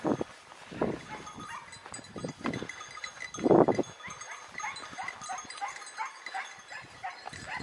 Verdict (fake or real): real